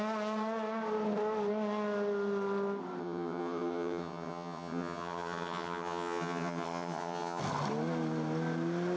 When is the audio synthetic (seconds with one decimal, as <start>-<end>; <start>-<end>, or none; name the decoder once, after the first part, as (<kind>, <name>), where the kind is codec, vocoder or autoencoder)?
3.0-7.4 (vocoder, HiFi-GAN)